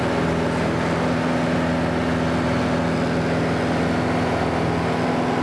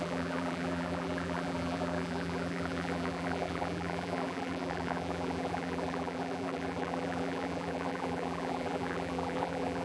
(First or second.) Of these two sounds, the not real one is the second